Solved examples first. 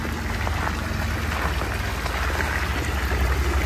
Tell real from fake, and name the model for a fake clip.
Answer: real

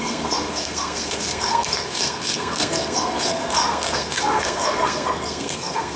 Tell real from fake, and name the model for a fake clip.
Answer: fake, codec, SNAC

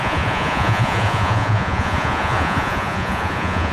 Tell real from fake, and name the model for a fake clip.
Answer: fake, vocoder, Vocos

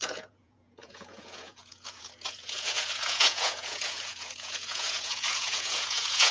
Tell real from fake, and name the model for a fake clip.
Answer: fake, vocoder, Vocos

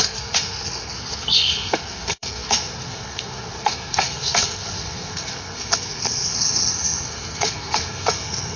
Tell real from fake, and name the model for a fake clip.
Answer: fake, codec, SNAC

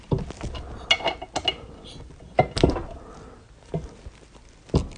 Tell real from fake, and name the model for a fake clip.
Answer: real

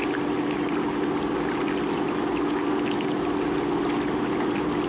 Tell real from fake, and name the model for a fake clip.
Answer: real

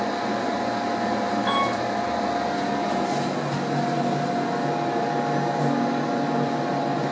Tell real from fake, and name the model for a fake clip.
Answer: real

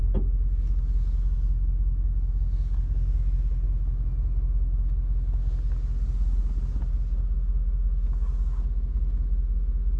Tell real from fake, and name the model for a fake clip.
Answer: real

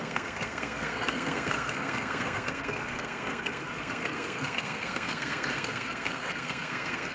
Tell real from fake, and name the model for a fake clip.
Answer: fake, codec, SNAC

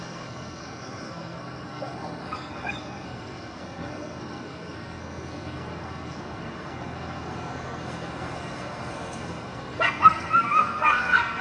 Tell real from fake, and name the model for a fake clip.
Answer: fake, codec, SNAC